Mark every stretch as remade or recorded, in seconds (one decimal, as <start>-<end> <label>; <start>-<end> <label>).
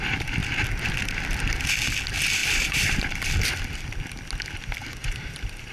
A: 0.0-2.4 recorded; 2.4-3.3 remade; 3.3-4.8 recorded; 4.8-5.7 remade